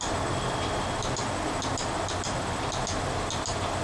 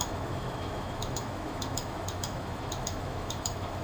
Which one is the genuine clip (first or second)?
first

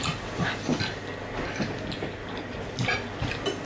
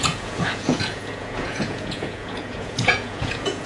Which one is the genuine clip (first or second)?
first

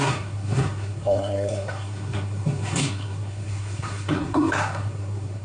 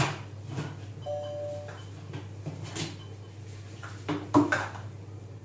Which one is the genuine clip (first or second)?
second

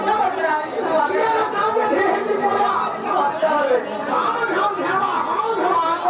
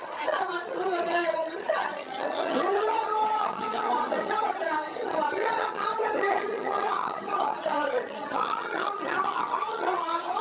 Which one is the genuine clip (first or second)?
first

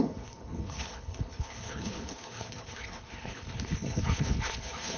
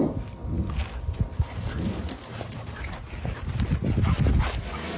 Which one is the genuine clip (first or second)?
second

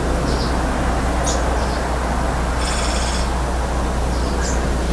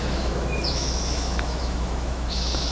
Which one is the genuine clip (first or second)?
first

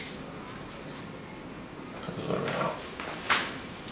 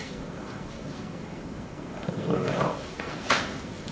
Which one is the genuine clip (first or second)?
first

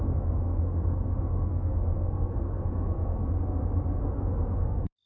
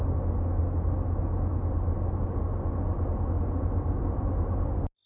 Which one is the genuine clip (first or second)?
second